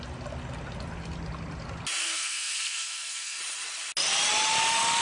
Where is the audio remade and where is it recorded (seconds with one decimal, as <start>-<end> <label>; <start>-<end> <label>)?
0.0-2.0 recorded; 2.0-3.4 remade; 3.4-5.0 recorded